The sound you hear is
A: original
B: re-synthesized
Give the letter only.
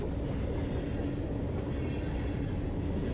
A